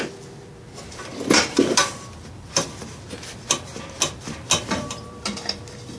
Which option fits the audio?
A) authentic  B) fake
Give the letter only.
B